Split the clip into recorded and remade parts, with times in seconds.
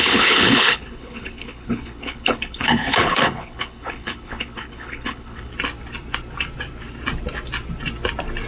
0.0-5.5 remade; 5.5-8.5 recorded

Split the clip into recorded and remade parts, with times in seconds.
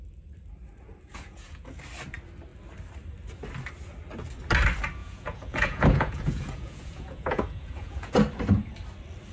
0.0-1.1 recorded; 1.1-1.8 remade; 1.8-5.0 recorded; 5.0-8.1 remade; 8.1-9.3 recorded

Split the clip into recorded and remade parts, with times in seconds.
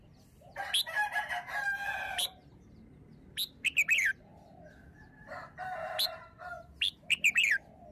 0.0-7.9 recorded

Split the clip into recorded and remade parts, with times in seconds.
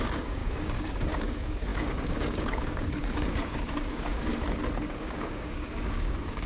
0.0-4.3 remade; 4.3-4.8 recorded; 4.8-6.5 remade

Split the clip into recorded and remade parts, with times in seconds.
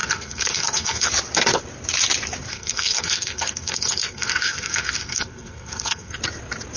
0.0-1.1 remade; 1.1-2.5 recorded; 2.5-6.2 remade; 6.2-6.8 recorded